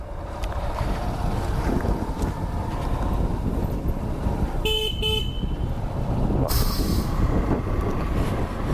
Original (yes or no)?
yes